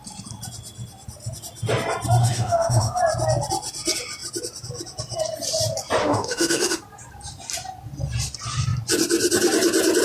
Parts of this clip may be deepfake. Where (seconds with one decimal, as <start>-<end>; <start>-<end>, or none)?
2.2-3.0; 6.0-6.8